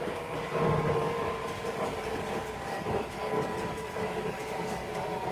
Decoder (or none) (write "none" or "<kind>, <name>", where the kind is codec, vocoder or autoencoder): codec, DAC